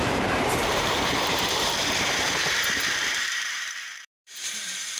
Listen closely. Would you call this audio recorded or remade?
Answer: remade